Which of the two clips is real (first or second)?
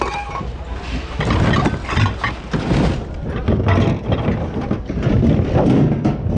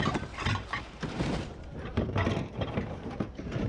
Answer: first